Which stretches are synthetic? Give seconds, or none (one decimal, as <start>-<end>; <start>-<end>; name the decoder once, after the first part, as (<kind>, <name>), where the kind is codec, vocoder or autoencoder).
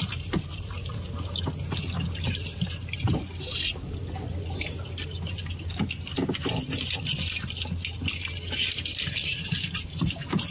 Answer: 0.0-1.0 (vocoder, BigVGAN v2)